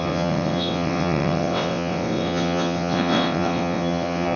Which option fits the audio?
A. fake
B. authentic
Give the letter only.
A